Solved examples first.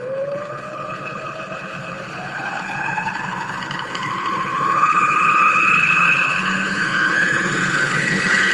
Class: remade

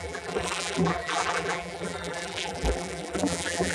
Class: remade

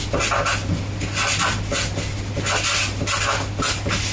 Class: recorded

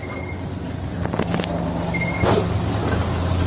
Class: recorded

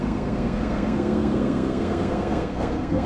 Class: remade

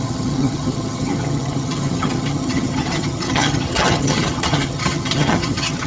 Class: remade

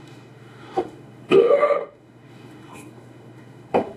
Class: remade